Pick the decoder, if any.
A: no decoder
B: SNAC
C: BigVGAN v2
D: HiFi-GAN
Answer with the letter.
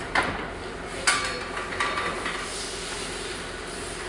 A